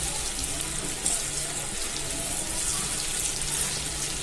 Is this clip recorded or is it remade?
recorded